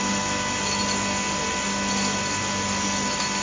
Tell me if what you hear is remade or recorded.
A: recorded